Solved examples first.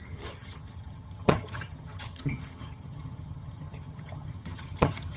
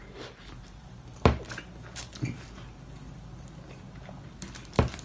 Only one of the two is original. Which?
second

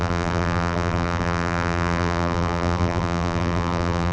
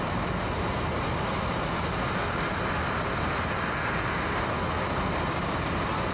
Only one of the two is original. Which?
second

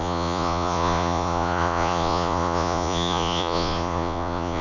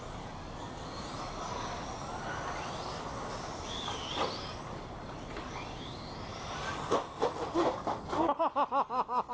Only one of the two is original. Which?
second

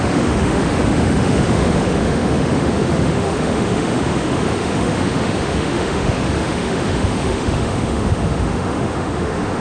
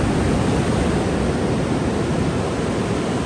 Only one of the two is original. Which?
second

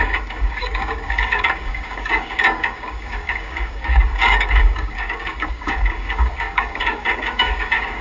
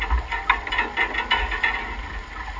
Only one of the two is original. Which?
second